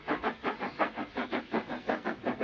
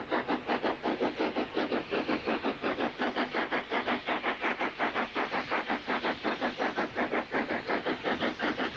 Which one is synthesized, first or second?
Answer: first